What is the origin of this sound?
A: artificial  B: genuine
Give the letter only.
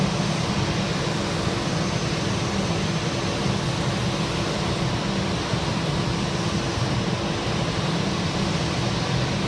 B